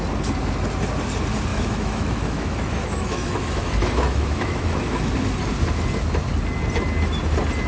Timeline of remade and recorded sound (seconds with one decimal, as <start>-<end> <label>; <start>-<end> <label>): 0.0-1.5 recorded; 1.5-5.1 remade; 5.1-7.7 recorded